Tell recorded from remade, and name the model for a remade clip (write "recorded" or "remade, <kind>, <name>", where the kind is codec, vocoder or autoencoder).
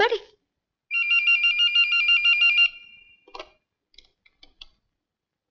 recorded